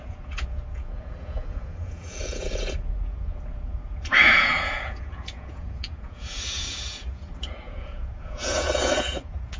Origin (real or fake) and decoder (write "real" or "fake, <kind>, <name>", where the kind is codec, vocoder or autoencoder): fake, vocoder, Vocos